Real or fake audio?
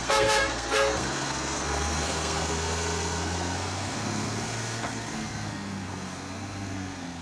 fake